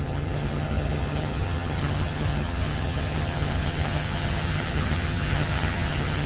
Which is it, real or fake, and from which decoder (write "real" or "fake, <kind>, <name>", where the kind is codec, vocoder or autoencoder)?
fake, vocoder, HiFi-GAN